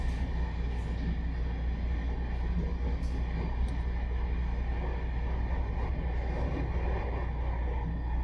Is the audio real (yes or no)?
yes